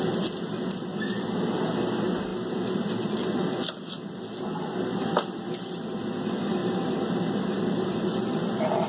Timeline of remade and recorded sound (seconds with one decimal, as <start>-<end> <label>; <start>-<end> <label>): 0.0-8.9 recorded